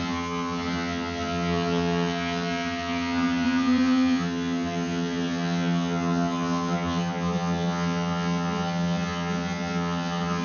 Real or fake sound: fake